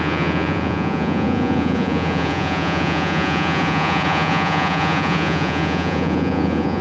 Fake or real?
fake